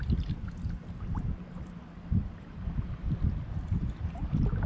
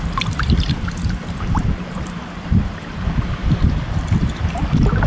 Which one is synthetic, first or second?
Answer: second